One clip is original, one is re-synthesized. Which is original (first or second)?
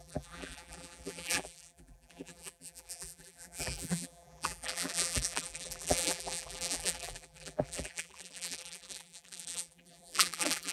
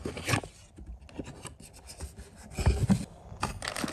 second